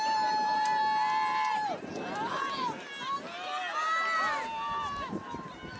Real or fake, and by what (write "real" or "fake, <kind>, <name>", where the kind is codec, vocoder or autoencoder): real